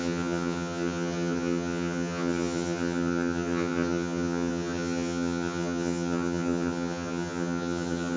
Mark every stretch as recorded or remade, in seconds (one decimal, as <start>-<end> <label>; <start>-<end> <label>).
0.0-8.2 remade